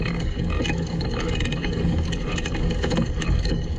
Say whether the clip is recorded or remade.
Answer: remade